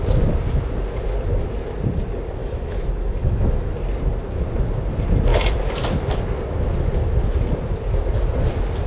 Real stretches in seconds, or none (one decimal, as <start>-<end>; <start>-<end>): 0.0-2.4; 3.7-8.9